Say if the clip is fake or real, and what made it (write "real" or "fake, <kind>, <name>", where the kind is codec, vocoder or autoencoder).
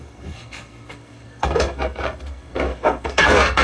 fake, codec, SNAC